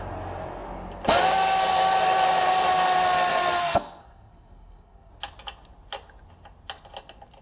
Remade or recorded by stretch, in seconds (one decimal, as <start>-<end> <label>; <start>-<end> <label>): 0.0-3.6 recorded; 3.6-5.1 remade; 5.1-7.4 recorded